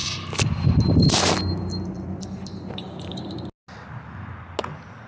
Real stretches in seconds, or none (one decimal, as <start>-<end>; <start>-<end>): 0.0-5.1